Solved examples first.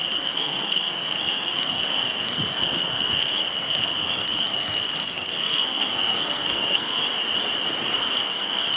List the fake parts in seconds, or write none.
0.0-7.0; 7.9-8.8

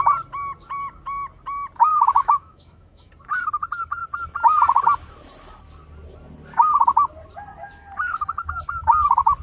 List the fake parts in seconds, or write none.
1.9-3.1

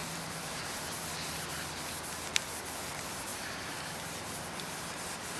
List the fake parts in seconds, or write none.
3.3-4.4

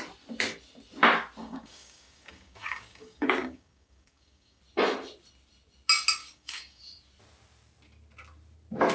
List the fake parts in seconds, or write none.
1.4-4.6; 6.2-6.8

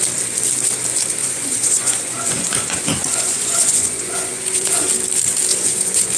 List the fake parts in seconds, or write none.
1.2-4.9; 5.5-6.2

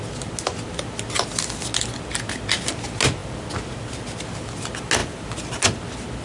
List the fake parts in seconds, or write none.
5.0-5.8